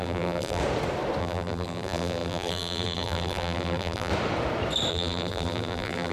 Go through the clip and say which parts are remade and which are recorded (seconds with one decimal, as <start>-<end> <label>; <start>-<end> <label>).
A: 0.0-0.6 remade; 0.6-1.2 recorded; 1.2-4.1 remade; 4.1-4.9 recorded; 4.9-6.1 remade

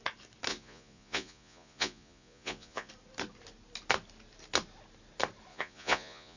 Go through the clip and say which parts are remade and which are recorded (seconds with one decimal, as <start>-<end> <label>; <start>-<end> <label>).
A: 0.0-0.5 recorded; 0.5-2.9 remade; 2.9-5.5 recorded; 5.5-6.4 remade

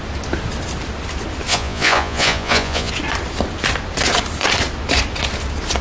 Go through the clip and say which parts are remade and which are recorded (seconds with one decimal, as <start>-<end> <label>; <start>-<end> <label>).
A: 0.0-1.5 recorded; 1.5-2.9 remade; 2.9-5.8 recorded

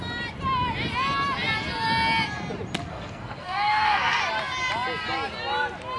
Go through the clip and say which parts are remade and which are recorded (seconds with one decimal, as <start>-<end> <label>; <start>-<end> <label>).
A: 0.0-2.9 recorded; 2.9-4.2 remade; 4.2-6.0 recorded

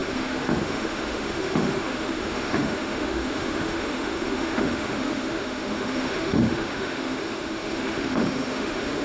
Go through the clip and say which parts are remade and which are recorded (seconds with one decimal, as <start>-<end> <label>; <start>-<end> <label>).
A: 0.0-9.0 remade

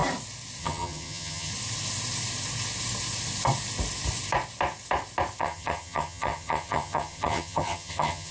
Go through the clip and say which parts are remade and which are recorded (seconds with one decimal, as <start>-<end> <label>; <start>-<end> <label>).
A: 0.0-0.6 recorded; 0.6-1.5 remade; 1.5-5.4 recorded; 5.4-8.3 remade

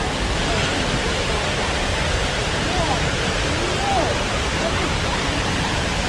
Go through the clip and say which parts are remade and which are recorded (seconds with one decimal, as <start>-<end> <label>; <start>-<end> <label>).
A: 0.0-2.4 recorded; 2.4-6.1 remade